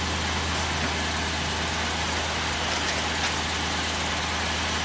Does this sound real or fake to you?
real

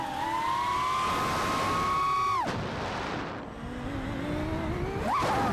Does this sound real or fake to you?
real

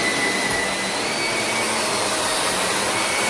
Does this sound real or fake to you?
real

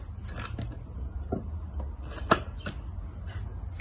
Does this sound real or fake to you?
real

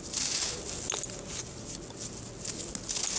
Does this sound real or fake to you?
real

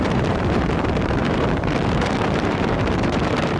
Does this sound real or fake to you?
fake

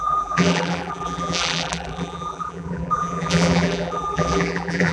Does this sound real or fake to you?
fake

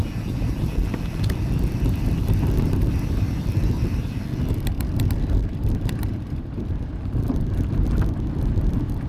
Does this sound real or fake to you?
fake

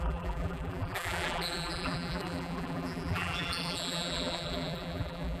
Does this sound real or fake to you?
fake